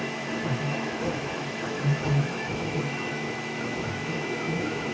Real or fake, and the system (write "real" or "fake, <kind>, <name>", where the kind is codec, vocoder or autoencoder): fake, autoencoder, DAC-VAE